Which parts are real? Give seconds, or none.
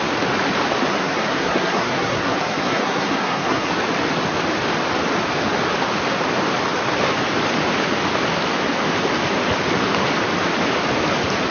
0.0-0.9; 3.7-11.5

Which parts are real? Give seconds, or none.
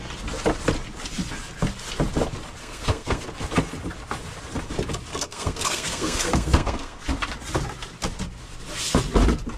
0.0-2.6; 3.2-5.1; 7.0-9.6